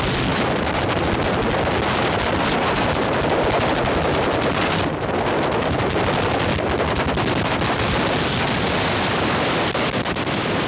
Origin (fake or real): real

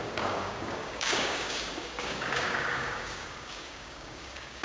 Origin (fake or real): fake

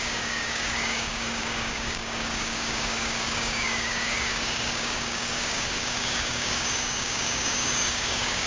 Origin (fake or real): fake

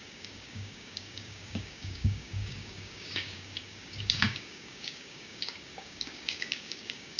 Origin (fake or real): fake